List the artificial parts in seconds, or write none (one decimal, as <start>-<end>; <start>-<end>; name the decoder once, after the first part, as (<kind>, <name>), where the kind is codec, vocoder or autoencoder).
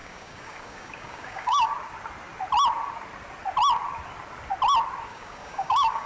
0.0-1.7 (codec, DAC); 5.1-6.1